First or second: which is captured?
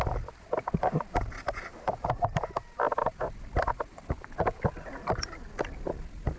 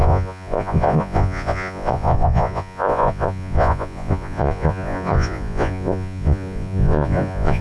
first